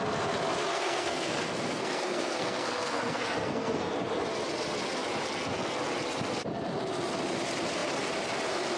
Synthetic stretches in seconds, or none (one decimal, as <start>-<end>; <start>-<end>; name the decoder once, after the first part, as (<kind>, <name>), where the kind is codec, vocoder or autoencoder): 0.7-3.9 (codec, SNAC)